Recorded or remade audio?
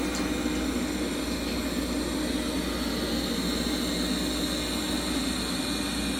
recorded